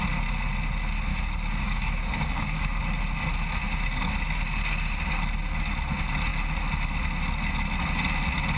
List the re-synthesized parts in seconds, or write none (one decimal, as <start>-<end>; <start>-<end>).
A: 1.1-2.8